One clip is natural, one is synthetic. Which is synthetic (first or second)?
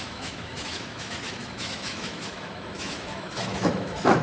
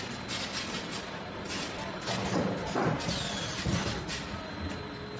first